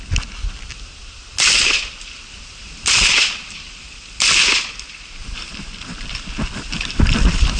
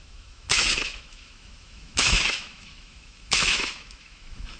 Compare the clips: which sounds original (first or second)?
first